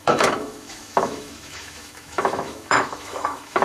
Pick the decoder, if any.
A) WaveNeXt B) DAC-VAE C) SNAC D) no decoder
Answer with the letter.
B